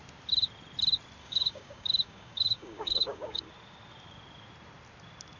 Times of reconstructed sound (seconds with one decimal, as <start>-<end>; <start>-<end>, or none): 1.2-3.5